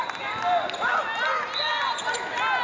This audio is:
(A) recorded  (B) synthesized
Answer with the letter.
A